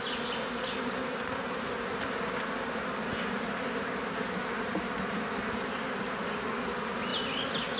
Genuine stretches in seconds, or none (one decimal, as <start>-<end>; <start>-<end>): 0.0-7.8